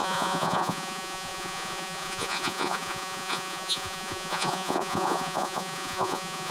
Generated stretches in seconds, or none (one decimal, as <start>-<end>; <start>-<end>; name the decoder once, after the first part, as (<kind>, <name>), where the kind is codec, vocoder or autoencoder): 0.0-6.5 (vocoder, Vocos)